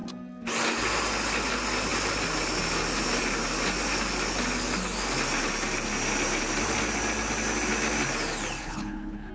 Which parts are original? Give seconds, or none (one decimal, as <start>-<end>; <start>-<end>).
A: 0.0-8.6